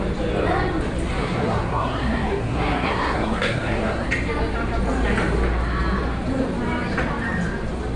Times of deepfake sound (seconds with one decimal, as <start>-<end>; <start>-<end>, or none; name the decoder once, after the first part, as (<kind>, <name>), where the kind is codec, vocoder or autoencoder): 1.2-4.1 (codec, SNAC)